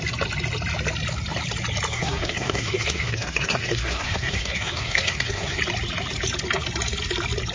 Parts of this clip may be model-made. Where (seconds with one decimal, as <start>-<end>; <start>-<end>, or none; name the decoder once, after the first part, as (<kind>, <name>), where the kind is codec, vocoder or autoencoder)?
1.9-5.6 (codec, SNAC)